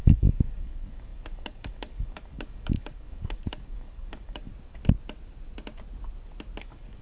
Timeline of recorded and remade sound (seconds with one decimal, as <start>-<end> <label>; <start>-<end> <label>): 0.0-4.5 remade; 4.5-6.6 recorded; 6.6-7.0 remade